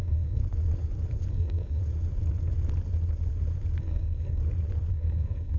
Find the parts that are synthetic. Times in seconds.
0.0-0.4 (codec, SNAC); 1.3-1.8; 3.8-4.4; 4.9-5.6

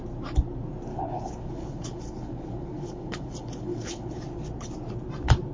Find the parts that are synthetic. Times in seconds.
0.9-4.2 (codec, HILCodec)

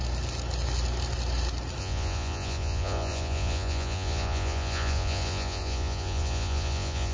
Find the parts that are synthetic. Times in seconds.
1.8-7.1 (vocoder, Vocos)

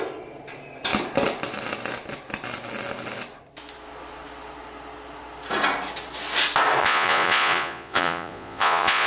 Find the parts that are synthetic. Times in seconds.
6.8-9.1 (vocoder, Vocos)

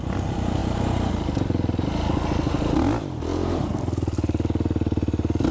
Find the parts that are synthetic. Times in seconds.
0.6-1.1 (vocoder, BigVGAN v2)

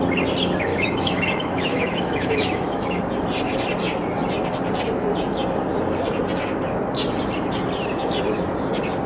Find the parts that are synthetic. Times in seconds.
0.7-3.0 (autoencoder, DAC-VAE)